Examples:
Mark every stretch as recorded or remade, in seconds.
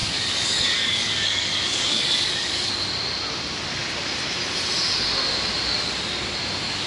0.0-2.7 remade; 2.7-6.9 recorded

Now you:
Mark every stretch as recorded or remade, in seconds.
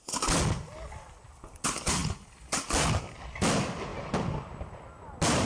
0.0-5.5 recorded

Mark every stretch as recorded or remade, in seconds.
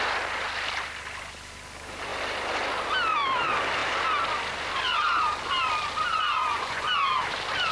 0.0-6.1 recorded; 6.1-6.9 remade; 6.9-7.7 recorded